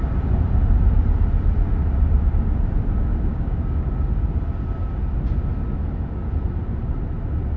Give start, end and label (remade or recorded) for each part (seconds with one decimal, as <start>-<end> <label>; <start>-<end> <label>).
0.0-3.3 recorded; 3.3-3.9 remade; 3.9-7.6 recorded